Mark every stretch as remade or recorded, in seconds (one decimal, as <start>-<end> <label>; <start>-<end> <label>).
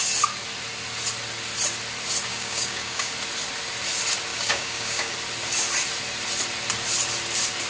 0.0-2.3 recorded; 2.3-3.1 remade; 3.1-4.3 recorded; 4.3-5.1 remade; 5.1-7.7 recorded